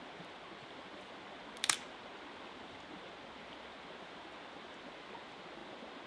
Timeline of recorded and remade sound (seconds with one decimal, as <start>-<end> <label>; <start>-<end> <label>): 0.0-6.1 recorded